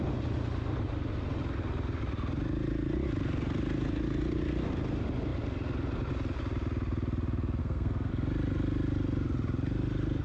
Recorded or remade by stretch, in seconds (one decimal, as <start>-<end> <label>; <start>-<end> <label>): 0.0-7.6 recorded; 7.6-8.1 remade; 8.1-10.2 recorded